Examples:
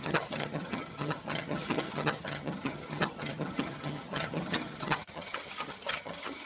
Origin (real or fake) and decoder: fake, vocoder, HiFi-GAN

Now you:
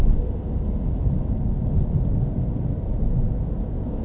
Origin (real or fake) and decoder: real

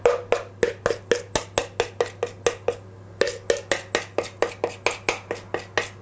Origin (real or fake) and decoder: real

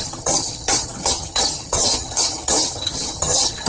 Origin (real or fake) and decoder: fake, vocoder, HiFi-GAN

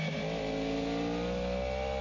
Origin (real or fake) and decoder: real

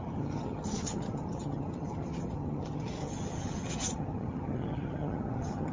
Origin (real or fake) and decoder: fake, vocoder, HiFi-GAN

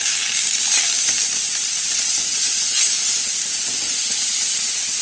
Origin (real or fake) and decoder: real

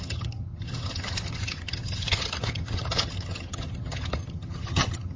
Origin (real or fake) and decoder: fake, vocoder, HiFi-GAN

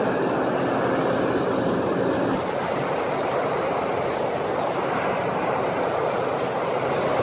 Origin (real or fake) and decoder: real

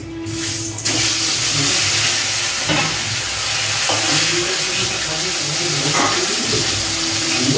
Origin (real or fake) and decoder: real